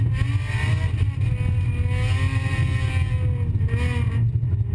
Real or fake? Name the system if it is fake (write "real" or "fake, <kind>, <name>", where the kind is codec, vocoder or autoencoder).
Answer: real